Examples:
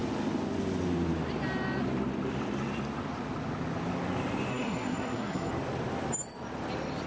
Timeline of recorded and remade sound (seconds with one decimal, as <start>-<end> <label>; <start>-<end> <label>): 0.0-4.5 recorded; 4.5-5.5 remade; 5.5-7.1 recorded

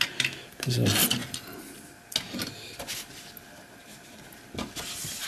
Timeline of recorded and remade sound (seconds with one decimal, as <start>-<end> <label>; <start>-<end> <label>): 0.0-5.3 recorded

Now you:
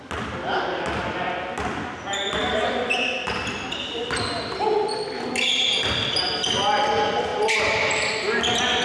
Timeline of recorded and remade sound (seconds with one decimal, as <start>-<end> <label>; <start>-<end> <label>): 0.0-8.8 recorded

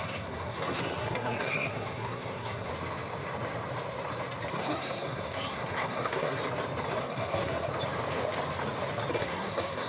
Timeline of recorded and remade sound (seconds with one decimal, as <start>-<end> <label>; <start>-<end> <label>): 0.0-2.7 remade; 2.7-4.5 recorded; 4.5-6.4 remade; 6.4-7.0 recorded; 7.0-7.7 remade; 7.7-9.1 recorded; 9.1-9.9 remade